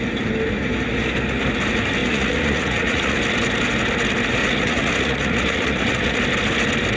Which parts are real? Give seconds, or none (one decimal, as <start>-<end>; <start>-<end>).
0.0-2.0; 3.2-4.4; 6.2-7.0